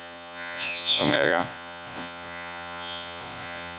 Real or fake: fake